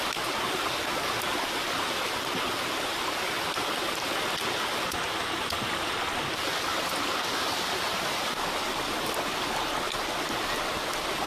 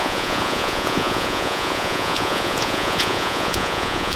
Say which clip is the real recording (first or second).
first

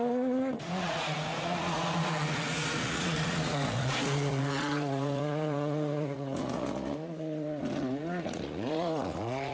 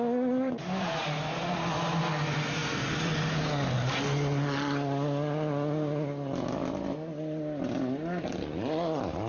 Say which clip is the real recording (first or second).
second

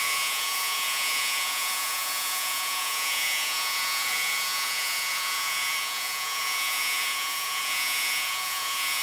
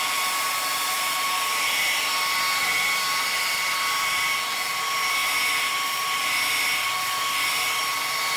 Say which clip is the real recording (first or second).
second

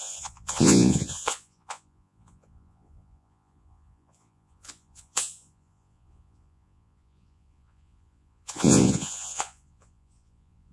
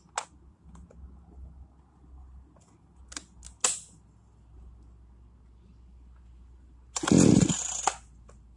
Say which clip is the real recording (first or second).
second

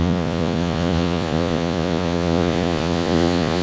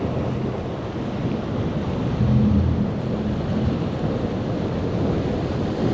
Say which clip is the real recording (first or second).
second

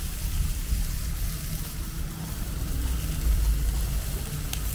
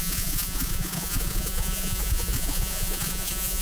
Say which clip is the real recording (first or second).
first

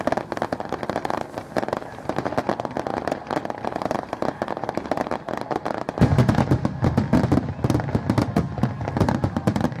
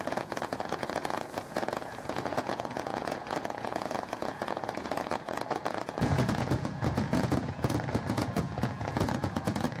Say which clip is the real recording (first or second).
first